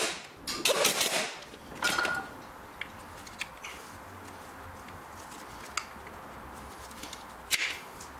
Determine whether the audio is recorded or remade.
recorded